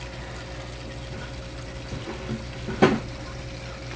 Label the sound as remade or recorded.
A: recorded